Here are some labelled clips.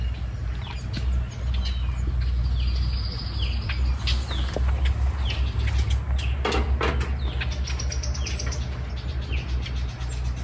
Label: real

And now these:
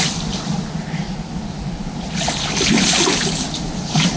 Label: real